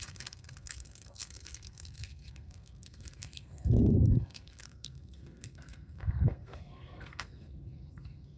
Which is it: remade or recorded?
remade